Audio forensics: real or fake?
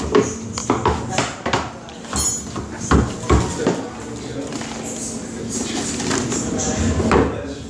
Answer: real